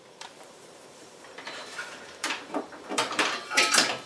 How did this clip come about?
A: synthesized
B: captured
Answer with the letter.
A